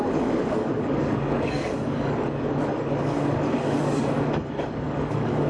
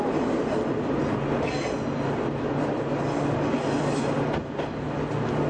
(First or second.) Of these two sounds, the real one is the second